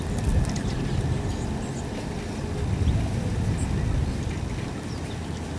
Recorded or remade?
recorded